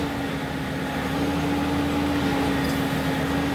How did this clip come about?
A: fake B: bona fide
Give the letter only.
B